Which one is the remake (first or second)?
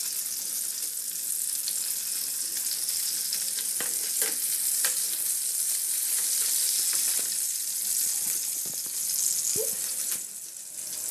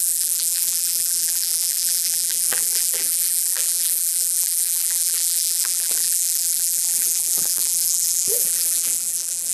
second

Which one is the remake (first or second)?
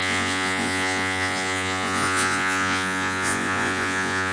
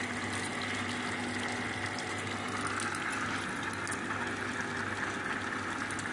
first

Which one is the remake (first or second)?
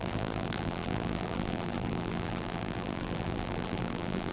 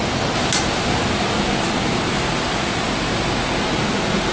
first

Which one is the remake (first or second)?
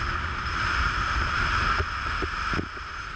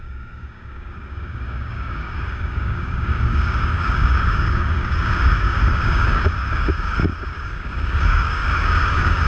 second